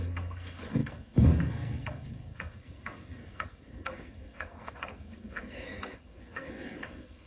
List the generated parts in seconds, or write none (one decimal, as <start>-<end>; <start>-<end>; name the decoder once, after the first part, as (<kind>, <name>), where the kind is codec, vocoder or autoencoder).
0.0-7.3 (codec, SNAC)